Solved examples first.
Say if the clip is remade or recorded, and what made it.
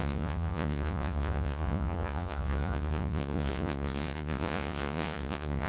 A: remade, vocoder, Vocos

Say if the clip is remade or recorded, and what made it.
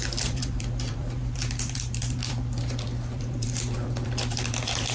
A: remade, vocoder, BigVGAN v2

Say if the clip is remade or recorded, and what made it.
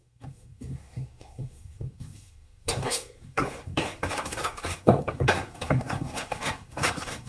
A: remade, codec, SNAC